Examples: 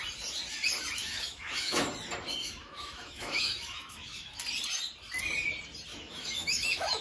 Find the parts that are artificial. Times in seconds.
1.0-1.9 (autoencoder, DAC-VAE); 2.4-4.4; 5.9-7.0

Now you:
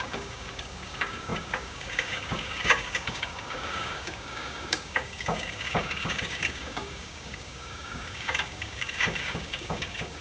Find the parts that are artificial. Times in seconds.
0.0-10.2 (codec, DAC)

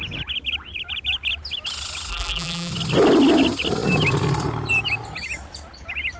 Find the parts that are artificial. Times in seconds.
2.1-2.7 (vocoder, BigVGAN v2)

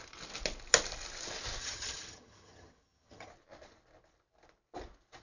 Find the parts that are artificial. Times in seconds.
1.6-3.3 (vocoder, HiFi-GAN)

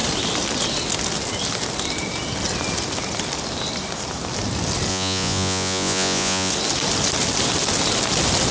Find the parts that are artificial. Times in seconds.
4.9-6.5 (vocoder, Vocos)

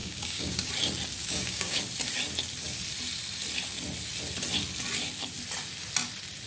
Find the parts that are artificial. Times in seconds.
0.0-0.7 (codec, DAC); 1.2-1.8